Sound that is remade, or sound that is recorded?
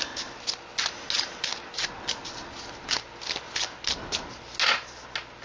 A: recorded